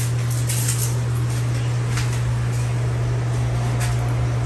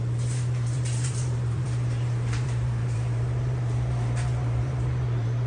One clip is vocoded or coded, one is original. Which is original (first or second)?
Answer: first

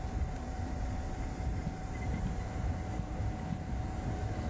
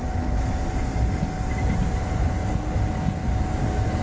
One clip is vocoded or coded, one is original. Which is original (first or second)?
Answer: second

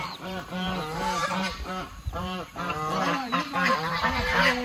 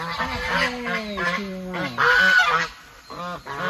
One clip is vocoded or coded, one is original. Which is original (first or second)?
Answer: second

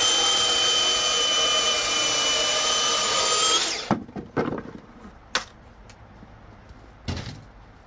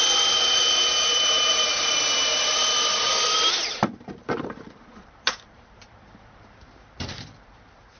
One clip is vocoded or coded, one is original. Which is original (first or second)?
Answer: first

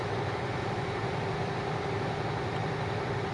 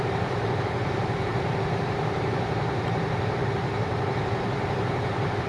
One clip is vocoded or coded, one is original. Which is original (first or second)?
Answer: first